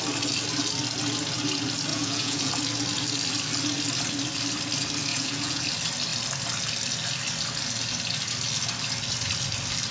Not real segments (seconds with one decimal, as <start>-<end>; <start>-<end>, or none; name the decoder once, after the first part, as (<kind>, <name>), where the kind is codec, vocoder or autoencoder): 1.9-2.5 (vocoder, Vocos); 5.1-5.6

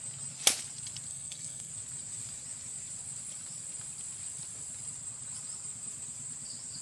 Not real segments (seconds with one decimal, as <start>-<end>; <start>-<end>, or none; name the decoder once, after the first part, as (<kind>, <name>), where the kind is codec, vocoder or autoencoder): 1.1-1.7 (codec, SNAC)

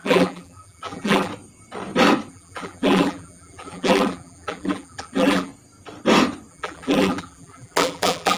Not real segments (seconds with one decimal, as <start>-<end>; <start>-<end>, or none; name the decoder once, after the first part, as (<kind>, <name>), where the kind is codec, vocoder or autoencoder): 0.0-1.3 (vocoder, BigVGAN v2); 2.3-5.5; 6.5-8.4